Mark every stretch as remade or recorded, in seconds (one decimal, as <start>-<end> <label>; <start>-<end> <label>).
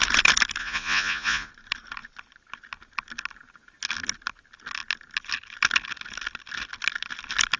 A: 0.0-0.6 recorded; 0.6-1.5 remade; 1.5-7.6 recorded